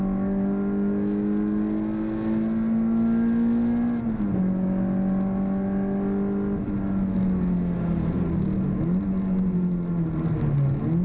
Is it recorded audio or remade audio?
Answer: recorded